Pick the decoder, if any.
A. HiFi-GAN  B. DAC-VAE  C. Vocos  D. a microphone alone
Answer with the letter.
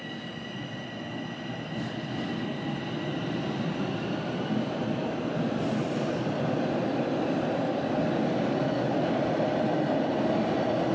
D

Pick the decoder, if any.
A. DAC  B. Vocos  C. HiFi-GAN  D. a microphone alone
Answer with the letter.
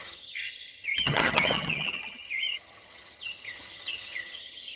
C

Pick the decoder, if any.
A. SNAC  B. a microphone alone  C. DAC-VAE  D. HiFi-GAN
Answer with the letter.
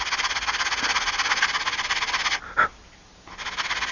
B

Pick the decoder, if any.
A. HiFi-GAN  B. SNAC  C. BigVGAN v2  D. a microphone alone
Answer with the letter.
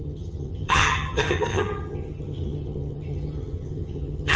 A